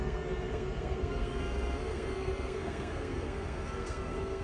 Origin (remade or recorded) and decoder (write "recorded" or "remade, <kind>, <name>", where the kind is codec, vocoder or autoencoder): remade, codec, SNAC